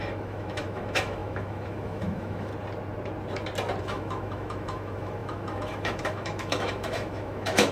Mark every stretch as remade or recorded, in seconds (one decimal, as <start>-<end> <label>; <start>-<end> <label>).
0.0-2.5 remade; 2.5-3.8 recorded; 3.8-7.7 remade

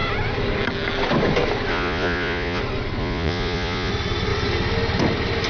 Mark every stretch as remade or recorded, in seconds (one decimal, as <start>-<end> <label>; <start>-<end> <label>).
0.0-1.7 recorded; 1.7-2.6 remade; 2.6-3.0 recorded; 3.0-3.9 remade; 3.9-5.5 recorded

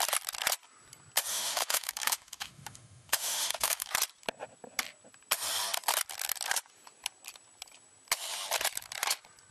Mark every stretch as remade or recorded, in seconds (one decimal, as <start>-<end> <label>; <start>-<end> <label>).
0.0-1.3 recorded; 1.3-3.9 remade; 3.9-9.5 recorded

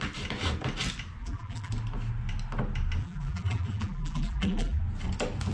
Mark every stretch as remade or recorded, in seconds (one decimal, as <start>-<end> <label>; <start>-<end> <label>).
0.0-1.2 recorded; 1.2-1.7 remade; 1.7-3.0 recorded; 3.0-4.8 remade; 4.8-5.5 recorded

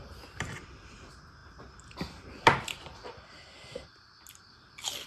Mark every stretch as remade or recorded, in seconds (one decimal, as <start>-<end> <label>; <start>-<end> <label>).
0.0-5.1 recorded